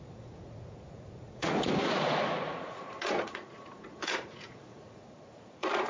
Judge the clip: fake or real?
fake